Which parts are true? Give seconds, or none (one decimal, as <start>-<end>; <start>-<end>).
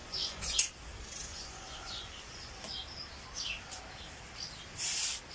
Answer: 0.7-1.3; 2.5-5.3